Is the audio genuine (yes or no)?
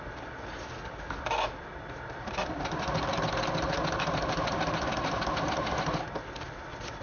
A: yes